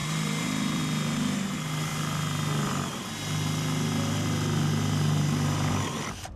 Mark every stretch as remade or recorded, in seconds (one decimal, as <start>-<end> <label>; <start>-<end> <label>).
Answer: 0.0-0.8 remade; 0.8-6.4 recorded